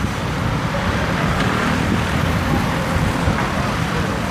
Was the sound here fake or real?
fake